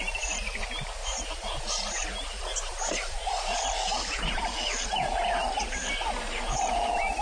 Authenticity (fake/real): fake